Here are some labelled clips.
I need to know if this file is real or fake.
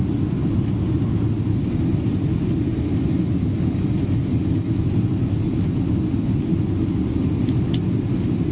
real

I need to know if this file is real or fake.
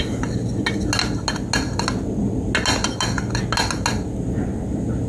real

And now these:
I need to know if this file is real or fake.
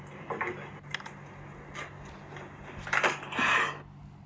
real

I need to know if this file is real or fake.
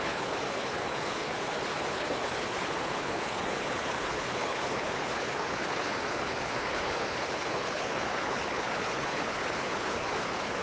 fake